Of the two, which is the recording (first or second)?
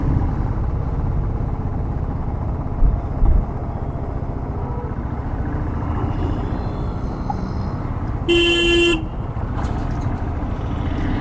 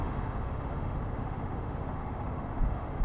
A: first